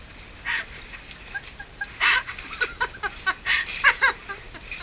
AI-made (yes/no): no